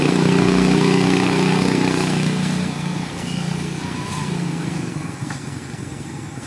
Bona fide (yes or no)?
no